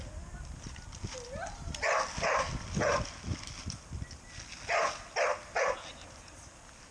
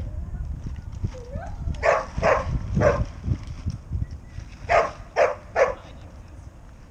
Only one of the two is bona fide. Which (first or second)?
first